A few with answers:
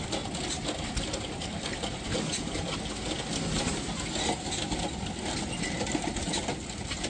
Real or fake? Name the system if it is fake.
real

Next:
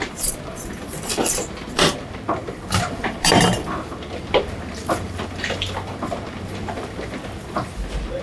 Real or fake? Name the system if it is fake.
fake, vocoder, BigVGAN v2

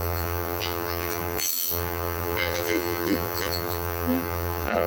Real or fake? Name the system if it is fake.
fake, vocoder, BigVGAN v2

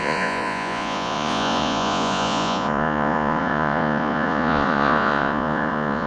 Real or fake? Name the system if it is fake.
fake, vocoder, Vocos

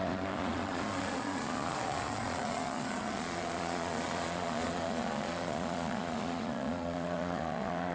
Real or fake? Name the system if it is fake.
fake, vocoder, Vocos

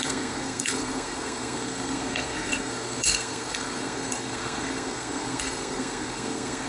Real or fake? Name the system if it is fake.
fake, codec, SNAC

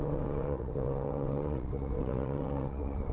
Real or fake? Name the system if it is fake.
fake, vocoder, WaveNeXt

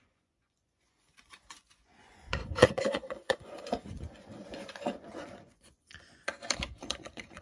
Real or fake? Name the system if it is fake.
fake, vocoder, Vocos